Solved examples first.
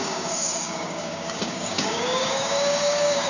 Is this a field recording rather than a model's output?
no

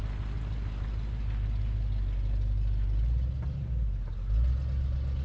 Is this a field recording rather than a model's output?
yes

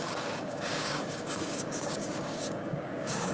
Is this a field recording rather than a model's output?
no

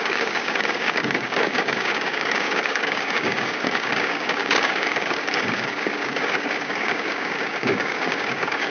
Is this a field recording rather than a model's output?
no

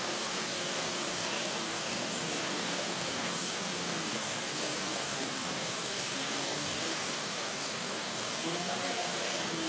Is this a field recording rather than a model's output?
no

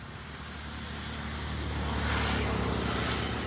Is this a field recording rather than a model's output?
yes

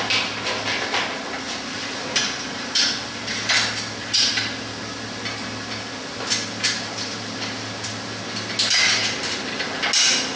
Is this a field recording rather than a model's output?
yes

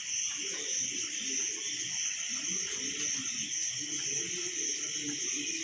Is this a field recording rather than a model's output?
yes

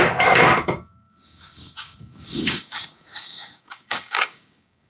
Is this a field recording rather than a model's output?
no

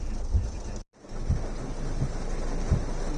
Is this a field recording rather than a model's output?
yes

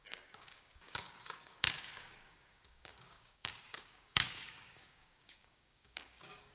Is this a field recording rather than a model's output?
no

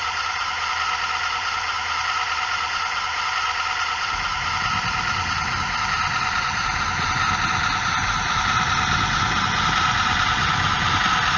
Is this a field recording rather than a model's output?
yes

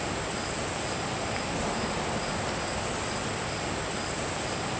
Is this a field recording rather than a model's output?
yes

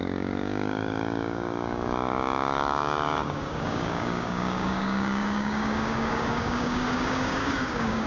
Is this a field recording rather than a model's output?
no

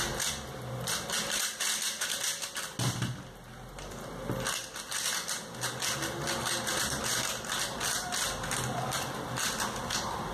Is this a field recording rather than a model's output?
yes